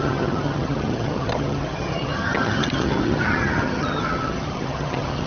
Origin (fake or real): fake